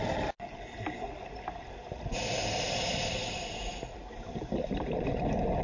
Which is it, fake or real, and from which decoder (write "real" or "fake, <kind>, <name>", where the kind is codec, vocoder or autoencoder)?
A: real